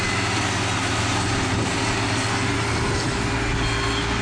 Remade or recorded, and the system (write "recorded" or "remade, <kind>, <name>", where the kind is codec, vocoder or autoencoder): recorded